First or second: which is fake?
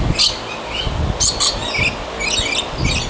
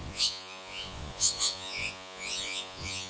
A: second